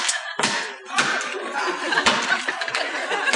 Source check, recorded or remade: recorded